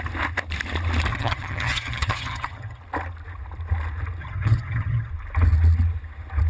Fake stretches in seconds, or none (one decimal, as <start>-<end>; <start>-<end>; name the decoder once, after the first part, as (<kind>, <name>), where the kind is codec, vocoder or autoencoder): 1.1-2.8 (vocoder, HiFi-GAN); 4.2-5.1